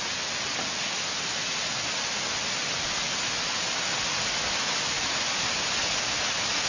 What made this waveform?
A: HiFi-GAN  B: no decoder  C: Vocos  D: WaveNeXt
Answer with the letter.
B